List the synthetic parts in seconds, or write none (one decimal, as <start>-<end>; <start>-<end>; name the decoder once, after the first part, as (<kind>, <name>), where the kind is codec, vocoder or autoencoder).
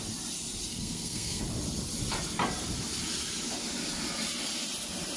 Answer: 0.7-1.4 (codec, SNAC)